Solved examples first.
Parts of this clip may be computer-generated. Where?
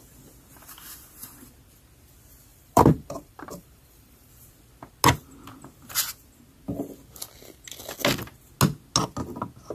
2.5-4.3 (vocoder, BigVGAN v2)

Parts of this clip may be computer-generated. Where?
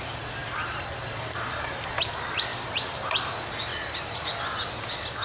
0.4-1.9 (vocoder, BigVGAN v2); 2.5-3.3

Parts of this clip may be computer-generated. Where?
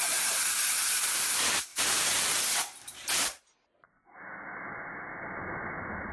1.7-2.2 (vocoder, BigVGAN v2); 2.9-3.5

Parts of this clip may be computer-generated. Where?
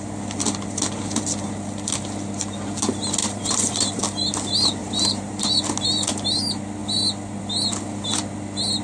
3.2-4.0 (vocoder, BigVGAN v2); 4.8-5.4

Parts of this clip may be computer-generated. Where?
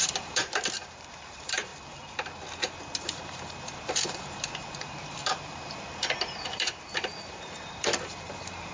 0.0-1.7 (vocoder, BigVGAN v2); 3.0-8.7